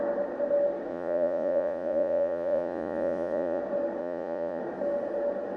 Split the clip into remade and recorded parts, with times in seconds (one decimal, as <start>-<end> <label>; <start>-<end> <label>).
0.0-0.9 recorded; 0.9-3.6 remade; 3.6-4.0 recorded; 4.0-4.6 remade; 4.6-5.6 recorded